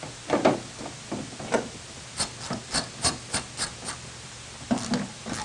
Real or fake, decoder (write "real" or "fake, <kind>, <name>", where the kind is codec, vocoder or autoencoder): real